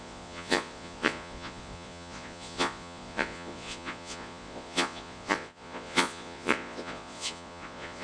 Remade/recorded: remade